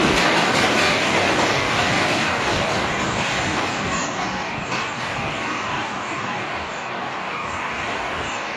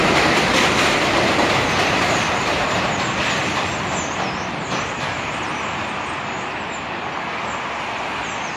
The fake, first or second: first